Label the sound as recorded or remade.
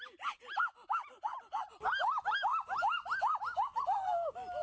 recorded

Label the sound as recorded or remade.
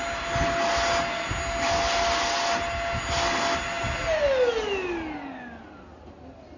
recorded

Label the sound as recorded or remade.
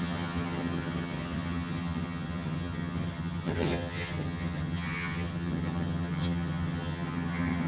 remade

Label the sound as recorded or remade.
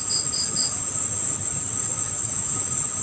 recorded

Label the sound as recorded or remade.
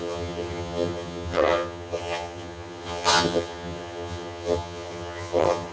remade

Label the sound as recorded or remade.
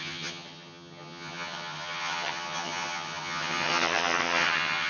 remade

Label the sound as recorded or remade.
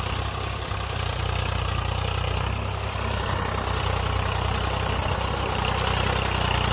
recorded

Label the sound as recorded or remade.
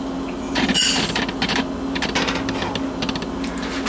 recorded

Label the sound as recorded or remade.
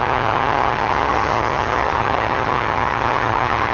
remade